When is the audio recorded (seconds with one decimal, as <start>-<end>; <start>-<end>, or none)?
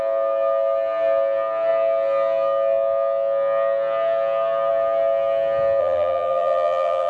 0.0-5.8